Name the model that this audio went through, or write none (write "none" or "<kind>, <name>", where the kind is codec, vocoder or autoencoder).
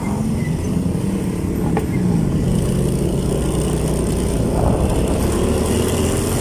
none